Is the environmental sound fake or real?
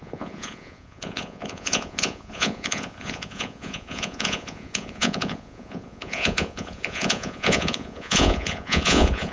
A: fake